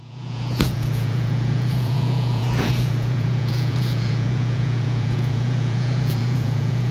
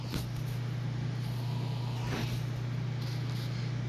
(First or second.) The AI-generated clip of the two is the first